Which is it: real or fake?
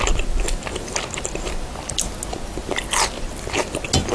real